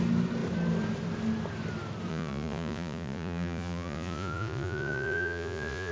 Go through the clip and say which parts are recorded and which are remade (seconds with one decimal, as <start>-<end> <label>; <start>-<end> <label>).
0.0-2.1 recorded; 2.1-5.9 remade